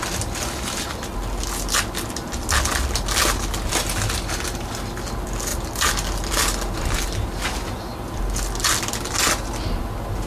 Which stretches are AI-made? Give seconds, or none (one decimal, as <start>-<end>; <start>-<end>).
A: none